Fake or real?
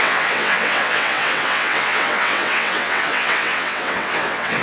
fake